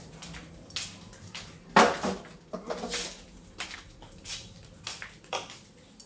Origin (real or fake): real